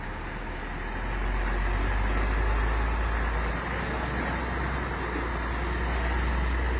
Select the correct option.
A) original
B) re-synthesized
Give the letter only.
A